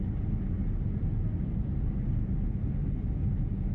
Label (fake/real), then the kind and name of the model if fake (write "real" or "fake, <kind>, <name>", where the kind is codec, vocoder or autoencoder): real